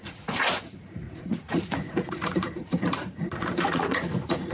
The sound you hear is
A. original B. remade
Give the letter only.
B